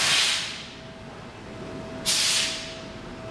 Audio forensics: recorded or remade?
recorded